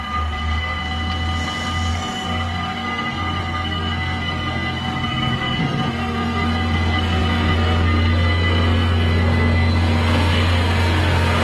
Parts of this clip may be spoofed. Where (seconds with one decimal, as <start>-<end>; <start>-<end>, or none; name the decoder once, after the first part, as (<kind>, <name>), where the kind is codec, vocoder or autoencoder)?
0.0-0.8 (codec, SNAC); 1.9-11.4